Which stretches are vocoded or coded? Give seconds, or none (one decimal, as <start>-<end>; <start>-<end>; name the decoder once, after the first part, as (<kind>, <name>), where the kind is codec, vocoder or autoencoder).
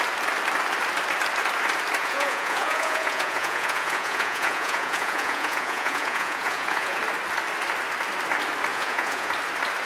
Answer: 2.0-7.0 (vocoder, Vocos); 8.7-9.3